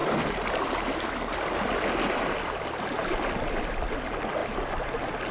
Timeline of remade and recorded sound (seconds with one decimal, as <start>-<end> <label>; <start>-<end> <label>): 0.0-5.3 recorded